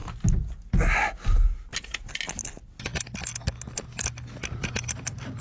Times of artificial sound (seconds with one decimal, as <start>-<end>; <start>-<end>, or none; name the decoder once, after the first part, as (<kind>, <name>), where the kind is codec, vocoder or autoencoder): none